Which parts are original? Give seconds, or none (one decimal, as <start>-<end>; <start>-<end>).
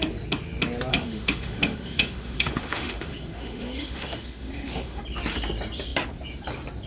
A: 0.0-0.9; 5.0-6.9